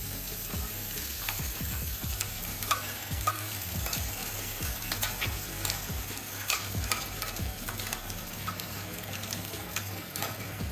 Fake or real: fake